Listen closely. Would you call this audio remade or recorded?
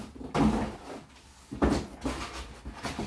recorded